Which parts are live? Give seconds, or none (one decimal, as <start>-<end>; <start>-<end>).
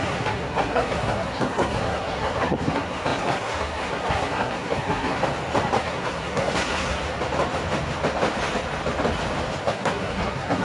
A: 5.2-5.8; 7.0-9.6